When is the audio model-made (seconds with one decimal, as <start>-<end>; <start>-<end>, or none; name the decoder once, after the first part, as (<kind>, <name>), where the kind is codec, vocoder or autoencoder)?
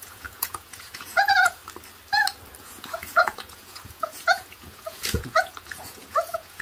0.0-1.6 (vocoder, Vocos); 2.6-6.6